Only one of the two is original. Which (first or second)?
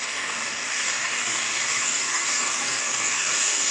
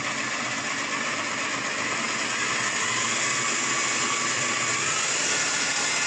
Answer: second